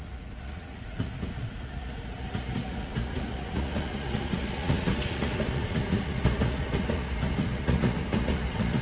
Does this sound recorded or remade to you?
remade